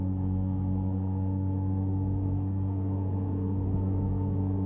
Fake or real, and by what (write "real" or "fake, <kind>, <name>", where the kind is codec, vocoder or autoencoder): fake, codec, SNAC